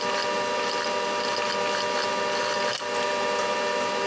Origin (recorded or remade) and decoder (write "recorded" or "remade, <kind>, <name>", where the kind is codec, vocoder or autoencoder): recorded